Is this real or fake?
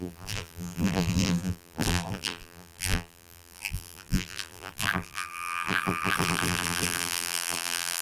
fake